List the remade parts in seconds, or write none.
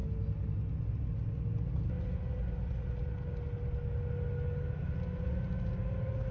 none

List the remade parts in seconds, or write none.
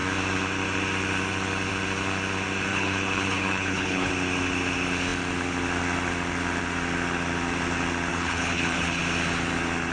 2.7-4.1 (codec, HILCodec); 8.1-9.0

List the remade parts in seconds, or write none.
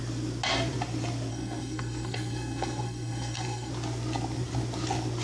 1.3-3.7 (codec, SNAC)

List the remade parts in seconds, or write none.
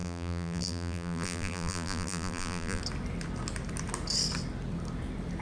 0.0-2.8 (vocoder, BigVGAN v2)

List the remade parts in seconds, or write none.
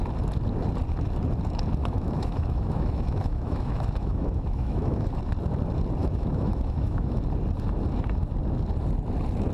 1.8-5.2 (autoencoder, DAC-VAE); 6.0-7.2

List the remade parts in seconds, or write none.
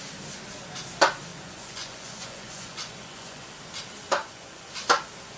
1.3-3.5 (vocoder, Vocos); 4.2-4.7